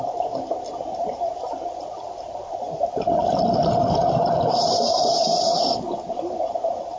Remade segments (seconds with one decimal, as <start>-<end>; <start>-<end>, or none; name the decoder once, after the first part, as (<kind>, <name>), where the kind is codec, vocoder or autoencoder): 0.0-7.0 (vocoder, BigVGAN v2)